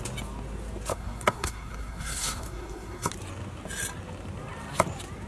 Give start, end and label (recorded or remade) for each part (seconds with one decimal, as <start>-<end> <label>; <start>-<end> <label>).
0.0-0.9 recorded; 0.9-3.1 remade; 3.1-5.3 recorded